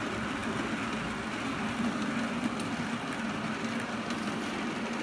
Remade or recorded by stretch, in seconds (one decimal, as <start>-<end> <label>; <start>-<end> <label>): 0.0-5.0 recorded